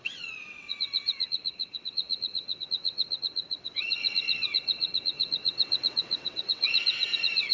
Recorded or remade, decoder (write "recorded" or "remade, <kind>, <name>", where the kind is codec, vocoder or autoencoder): remade, vocoder, WaveNeXt